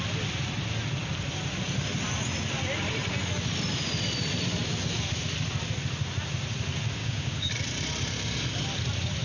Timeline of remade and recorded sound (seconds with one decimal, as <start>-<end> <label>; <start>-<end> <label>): 0.0-7.0 recorded; 7.0-7.5 remade; 7.5-9.2 recorded